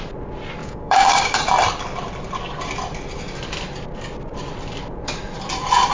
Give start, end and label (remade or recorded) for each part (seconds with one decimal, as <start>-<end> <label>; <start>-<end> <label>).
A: 0.0-0.6 recorded; 0.6-1.4 remade; 1.4-5.9 recorded